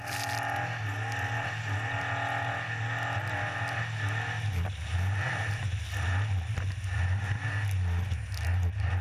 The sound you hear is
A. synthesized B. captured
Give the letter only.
B